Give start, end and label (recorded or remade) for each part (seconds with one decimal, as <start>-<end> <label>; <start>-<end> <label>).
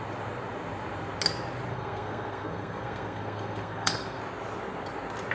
0.0-1.7 recorded; 1.7-4.2 remade; 4.2-5.3 recorded